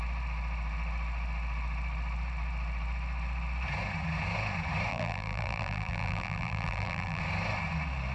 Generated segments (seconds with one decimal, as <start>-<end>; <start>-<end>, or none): 4.9-7.2

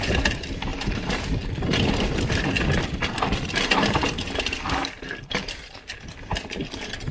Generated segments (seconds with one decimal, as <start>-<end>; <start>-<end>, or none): 0.7-1.2